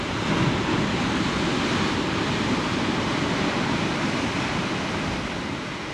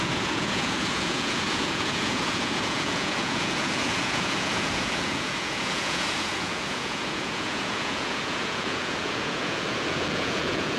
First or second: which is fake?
second